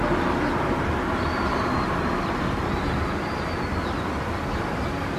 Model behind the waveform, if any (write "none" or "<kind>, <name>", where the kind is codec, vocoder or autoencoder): none